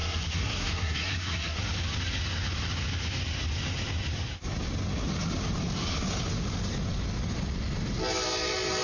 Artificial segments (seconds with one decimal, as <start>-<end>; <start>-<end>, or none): 0.0-1.6

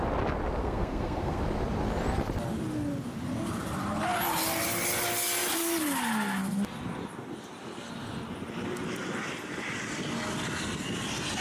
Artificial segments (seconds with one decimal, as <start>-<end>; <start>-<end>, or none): 0.6-1.4

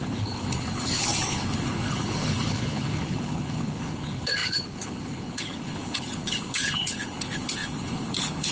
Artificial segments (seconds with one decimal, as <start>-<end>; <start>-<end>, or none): 0.0-8.5

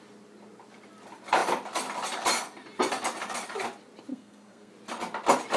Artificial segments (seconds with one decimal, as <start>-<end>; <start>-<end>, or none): 4.1-4.7

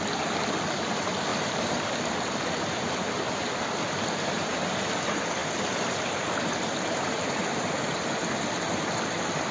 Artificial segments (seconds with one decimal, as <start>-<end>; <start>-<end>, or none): none

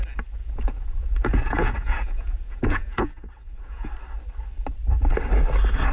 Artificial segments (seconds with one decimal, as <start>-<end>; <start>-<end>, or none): 0.4-3.9

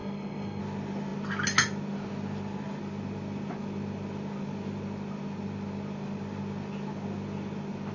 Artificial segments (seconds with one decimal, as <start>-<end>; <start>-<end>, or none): 0.0-0.6